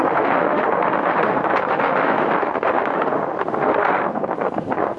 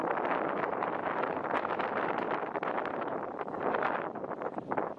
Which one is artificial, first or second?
first